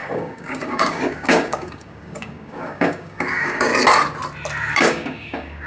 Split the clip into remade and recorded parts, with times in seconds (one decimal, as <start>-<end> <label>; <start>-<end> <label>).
0.0-3.7 remade; 3.7-4.7 recorded; 4.7-5.7 remade